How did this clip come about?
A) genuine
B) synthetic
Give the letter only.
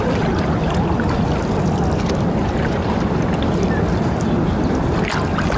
A